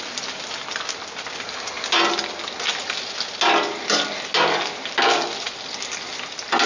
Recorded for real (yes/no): yes